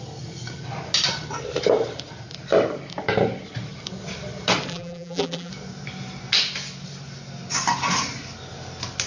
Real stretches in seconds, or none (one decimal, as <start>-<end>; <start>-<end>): 0.0-4.7; 5.5-9.1